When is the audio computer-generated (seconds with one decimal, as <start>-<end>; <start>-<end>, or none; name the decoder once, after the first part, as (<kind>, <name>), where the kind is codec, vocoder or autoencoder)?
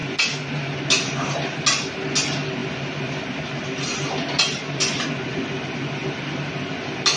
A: none